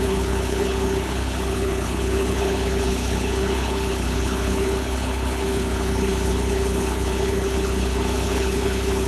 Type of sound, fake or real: fake